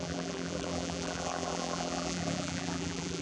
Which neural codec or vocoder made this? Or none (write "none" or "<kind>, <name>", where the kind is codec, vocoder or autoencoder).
vocoder, BigVGAN v2